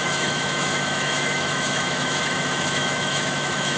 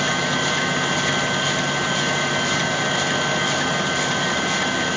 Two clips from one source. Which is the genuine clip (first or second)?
second